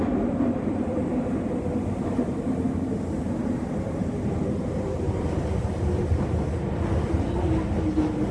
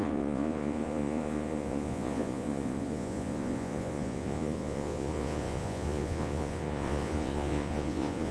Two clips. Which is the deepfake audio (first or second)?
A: second